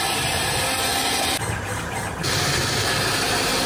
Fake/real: fake